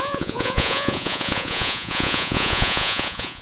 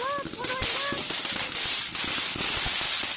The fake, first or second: first